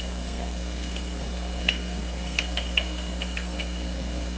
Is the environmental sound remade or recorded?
remade